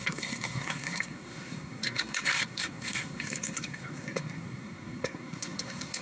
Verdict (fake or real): fake